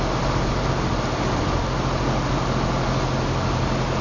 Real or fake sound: real